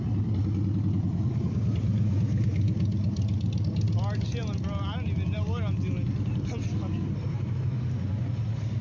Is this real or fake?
real